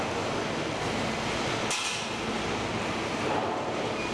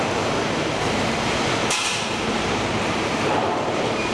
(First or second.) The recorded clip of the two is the first